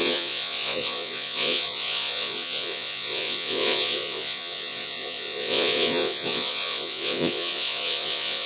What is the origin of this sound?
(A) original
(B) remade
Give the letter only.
B